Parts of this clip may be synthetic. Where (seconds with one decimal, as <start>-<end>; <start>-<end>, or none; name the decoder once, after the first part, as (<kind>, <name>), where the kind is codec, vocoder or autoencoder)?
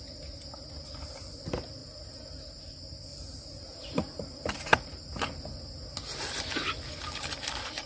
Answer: 1.8-2.6 (vocoder, BigVGAN v2); 3.1-5.1